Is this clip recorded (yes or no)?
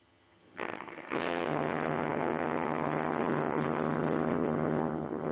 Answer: no